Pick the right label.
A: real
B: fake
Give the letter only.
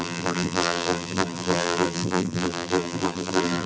B